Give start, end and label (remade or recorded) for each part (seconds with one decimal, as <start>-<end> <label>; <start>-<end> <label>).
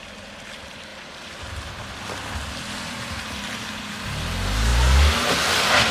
0.0-5.9 recorded